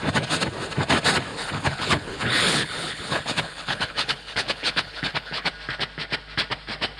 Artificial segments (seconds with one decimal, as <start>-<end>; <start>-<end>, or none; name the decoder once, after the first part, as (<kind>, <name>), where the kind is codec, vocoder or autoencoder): 1.3-5.5 (codec, HILCodec)